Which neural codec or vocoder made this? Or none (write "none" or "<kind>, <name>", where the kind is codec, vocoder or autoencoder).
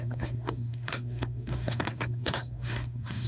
codec, SNAC